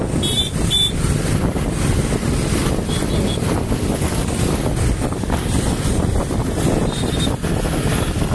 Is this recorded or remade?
recorded